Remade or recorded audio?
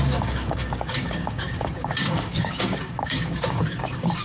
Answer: remade